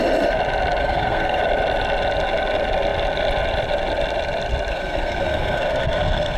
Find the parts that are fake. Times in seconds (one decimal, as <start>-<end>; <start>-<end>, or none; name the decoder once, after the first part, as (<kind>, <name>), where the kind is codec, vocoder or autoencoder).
0.8-1.4 (codec, SNAC); 4.7-6.4